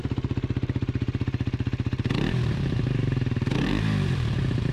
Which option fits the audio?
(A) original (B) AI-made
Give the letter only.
B